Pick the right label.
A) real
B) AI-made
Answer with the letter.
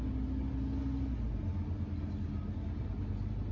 A